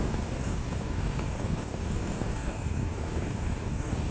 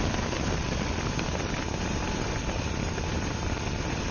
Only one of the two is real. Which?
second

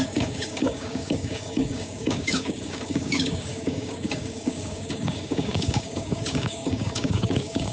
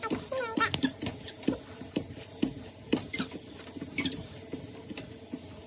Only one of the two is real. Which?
second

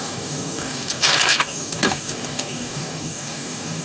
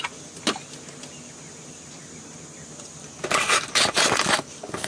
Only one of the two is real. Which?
second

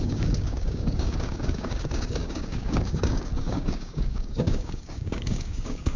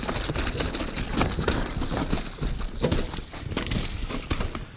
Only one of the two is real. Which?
second